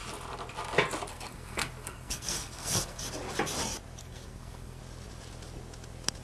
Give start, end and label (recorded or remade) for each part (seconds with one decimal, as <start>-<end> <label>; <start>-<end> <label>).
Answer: 0.0-1.1 recorded; 1.1-3.0 remade; 3.0-4.0 recorded; 4.0-4.8 remade; 4.8-6.2 recorded